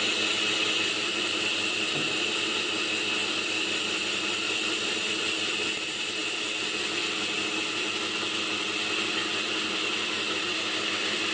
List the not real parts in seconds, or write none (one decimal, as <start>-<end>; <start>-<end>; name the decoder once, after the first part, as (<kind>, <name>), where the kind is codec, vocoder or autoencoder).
none